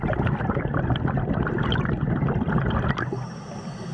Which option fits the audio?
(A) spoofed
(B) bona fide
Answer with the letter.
B